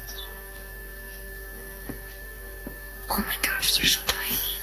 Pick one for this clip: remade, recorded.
remade